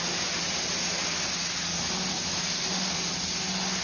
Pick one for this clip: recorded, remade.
recorded